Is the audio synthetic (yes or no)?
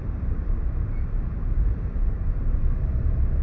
yes